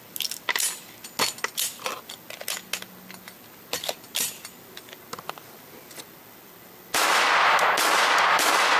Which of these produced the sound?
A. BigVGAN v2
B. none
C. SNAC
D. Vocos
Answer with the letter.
B